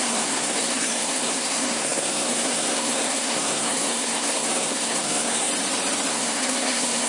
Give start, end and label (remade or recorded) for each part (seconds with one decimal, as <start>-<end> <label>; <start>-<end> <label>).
0.0-5.5 remade; 5.5-6.1 recorded; 6.1-7.1 remade